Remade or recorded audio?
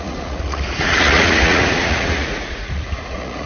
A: remade